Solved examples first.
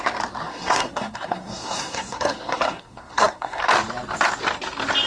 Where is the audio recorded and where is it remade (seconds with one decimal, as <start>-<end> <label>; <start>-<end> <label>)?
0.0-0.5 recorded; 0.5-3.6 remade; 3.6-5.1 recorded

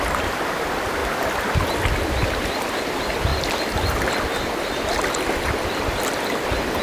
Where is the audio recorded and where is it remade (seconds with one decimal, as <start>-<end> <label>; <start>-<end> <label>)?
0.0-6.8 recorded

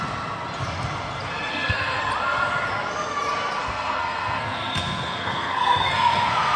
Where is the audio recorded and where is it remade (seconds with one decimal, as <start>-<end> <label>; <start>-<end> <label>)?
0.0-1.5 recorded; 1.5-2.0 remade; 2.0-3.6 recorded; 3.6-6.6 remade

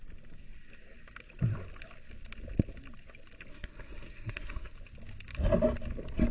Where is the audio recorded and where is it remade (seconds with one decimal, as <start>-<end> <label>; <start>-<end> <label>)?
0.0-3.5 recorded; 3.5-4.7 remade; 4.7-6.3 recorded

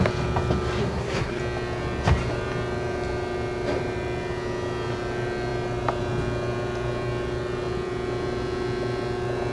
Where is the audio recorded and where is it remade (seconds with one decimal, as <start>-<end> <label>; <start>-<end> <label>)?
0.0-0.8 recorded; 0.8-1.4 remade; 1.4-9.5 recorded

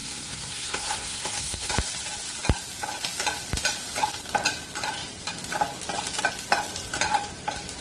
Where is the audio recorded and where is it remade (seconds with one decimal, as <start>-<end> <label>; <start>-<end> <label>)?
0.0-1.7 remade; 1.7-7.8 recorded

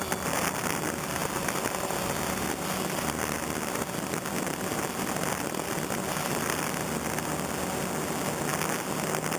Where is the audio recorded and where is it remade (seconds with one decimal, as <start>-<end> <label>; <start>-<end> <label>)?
0.0-9.4 recorded

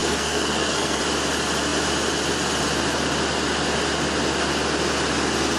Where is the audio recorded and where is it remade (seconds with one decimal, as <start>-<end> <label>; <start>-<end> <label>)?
0.0-1.0 remade; 1.0-5.6 recorded